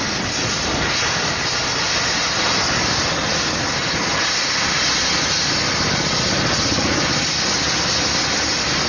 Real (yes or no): yes